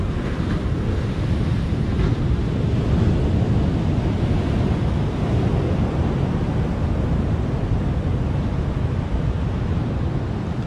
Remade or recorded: recorded